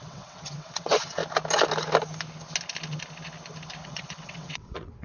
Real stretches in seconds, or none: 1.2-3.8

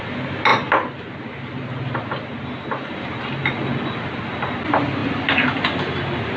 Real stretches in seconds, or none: 0.0-6.4